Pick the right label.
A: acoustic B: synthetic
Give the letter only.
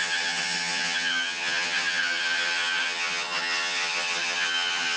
B